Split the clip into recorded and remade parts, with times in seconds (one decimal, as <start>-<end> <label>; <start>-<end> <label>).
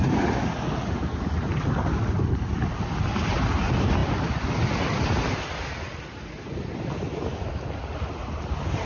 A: 0.0-8.9 recorded